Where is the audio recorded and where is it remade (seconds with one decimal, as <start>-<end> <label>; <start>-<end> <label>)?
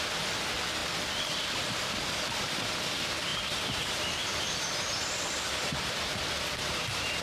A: 0.0-0.8 recorded; 0.8-2.5 remade; 2.5-3.3 recorded; 3.3-6.8 remade; 6.8-7.2 recorded